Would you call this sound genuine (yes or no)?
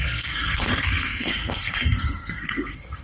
no